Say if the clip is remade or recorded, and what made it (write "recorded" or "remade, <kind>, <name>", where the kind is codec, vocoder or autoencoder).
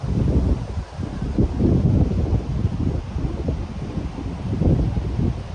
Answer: recorded